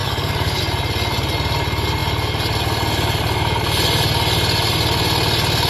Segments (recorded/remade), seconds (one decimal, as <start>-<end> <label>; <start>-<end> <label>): 0.0-0.6 remade; 0.6-5.7 recorded